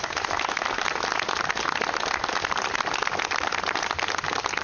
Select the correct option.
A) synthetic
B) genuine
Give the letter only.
B